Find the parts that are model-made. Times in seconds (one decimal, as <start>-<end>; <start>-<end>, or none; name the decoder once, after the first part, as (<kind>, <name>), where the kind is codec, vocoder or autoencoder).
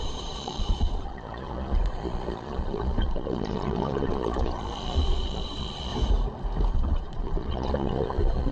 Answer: 0.0-5.9 (vocoder, Vocos); 6.7-8.5